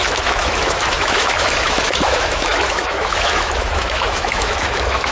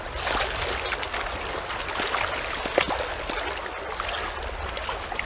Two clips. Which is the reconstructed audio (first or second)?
first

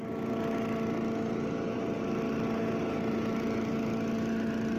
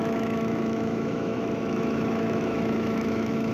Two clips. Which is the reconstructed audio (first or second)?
second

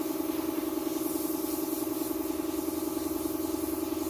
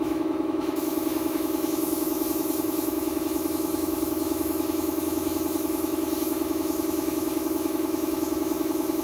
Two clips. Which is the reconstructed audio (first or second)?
second